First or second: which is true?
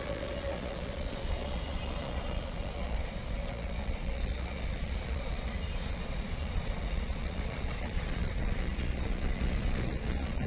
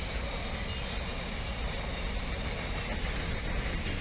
second